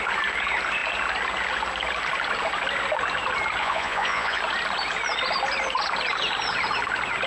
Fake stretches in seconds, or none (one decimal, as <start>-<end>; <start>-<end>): 3.6-4.4